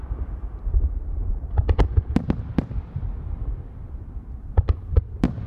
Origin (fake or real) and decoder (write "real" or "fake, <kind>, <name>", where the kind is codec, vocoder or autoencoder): fake, vocoder, BigVGAN v2